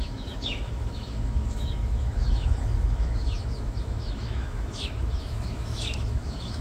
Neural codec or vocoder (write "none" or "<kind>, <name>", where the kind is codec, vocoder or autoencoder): autoencoder, DAC-VAE